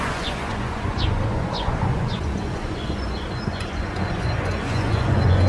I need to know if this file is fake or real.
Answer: fake